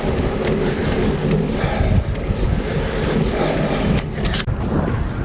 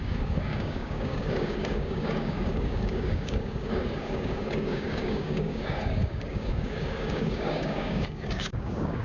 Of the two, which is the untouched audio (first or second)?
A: first